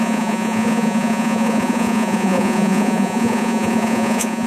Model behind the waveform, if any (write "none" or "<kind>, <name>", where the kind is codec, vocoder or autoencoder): vocoder, Vocos